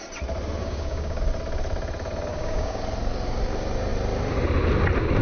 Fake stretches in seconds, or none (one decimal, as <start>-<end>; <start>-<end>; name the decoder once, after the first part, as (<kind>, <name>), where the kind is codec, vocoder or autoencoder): 0.6-1.2 (codec, DAC); 2.3-2.8